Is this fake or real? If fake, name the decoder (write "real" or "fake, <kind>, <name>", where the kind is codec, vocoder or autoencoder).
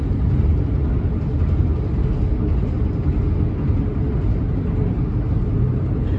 real